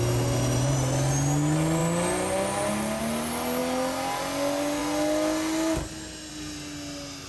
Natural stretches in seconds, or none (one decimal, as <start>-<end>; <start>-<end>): 0.0-7.3